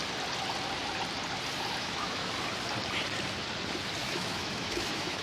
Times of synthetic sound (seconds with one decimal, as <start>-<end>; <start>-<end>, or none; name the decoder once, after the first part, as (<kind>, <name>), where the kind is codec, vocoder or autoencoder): 1.8-2.3 (autoencoder, DAC-VAE); 4.0-5.2